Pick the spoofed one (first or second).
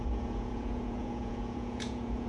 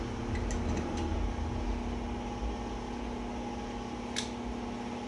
first